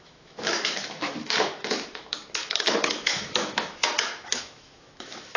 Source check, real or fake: fake